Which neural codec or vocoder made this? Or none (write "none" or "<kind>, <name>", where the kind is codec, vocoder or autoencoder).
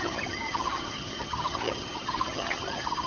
vocoder, HiFi-GAN